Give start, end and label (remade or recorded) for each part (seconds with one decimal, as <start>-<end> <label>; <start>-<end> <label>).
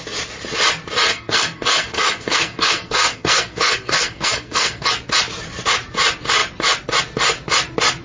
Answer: 0.0-1.1 recorded; 1.1-4.9 remade; 4.9-8.0 recorded